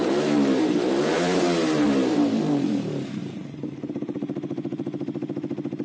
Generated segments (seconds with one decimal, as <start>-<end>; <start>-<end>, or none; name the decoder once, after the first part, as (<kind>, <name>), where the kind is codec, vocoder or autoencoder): 0.0-3.2 (vocoder, BigVGAN v2); 3.7-5.8